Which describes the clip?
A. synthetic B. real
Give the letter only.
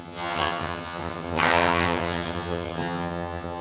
A